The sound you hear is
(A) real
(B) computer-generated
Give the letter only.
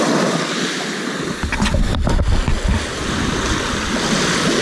A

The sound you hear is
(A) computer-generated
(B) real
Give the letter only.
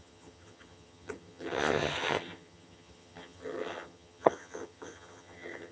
A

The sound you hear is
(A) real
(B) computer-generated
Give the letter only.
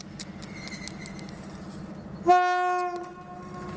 A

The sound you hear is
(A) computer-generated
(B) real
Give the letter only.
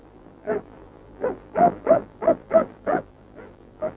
A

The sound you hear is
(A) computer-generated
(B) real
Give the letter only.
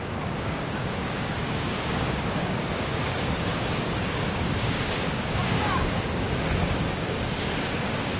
A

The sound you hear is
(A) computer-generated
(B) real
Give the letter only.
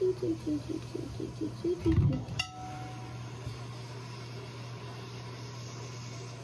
B